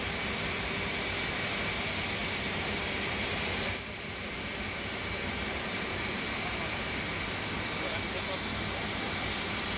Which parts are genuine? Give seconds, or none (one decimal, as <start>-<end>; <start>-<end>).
0.0-2.2; 7.0-8.8; 9.3-9.8